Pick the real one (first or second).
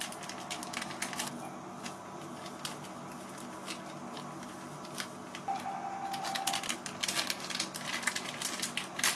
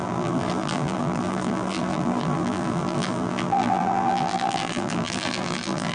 first